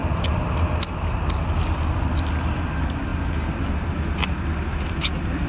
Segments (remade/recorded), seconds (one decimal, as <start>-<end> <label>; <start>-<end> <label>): 0.0-5.5 recorded